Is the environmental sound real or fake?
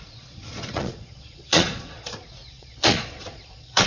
fake